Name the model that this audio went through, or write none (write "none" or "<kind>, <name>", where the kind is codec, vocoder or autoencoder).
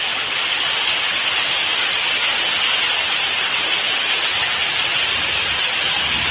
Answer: none